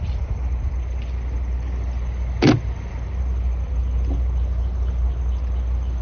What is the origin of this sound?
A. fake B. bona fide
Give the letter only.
B